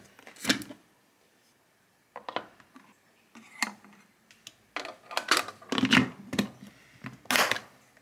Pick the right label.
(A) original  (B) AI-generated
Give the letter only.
A